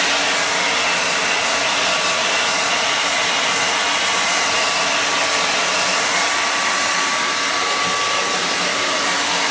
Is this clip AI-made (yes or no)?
no